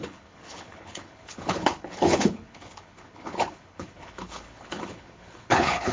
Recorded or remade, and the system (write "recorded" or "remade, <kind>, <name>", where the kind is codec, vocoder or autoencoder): remade, codec, HILCodec